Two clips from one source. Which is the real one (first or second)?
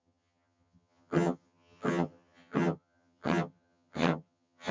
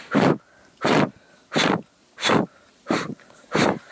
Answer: second